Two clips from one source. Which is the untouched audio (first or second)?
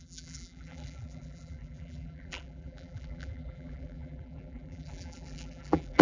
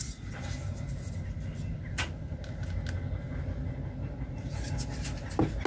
second